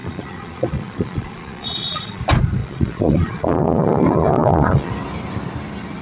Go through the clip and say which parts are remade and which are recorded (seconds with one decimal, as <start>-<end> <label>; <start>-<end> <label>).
0.0-2.2 remade; 2.2-2.6 recorded; 2.6-4.9 remade; 4.9-6.0 recorded